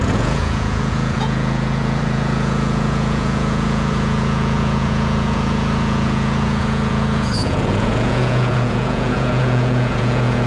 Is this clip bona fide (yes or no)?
no